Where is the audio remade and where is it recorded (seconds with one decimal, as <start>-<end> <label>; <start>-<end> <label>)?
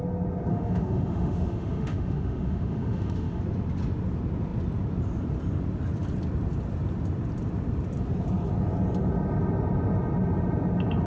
0.0-0.5 recorded; 0.5-3.4 remade; 3.4-11.1 recorded